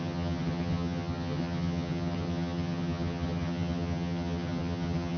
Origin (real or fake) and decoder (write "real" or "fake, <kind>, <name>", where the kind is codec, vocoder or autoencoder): fake, vocoder, HiFi-GAN